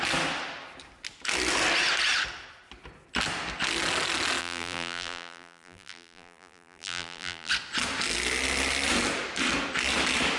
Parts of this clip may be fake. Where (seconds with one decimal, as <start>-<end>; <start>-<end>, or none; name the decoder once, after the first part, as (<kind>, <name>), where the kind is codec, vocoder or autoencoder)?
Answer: 4.4-7.5 (vocoder, BigVGAN v2)